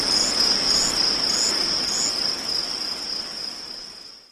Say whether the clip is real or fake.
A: real